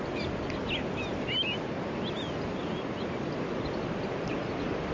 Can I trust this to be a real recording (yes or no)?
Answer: yes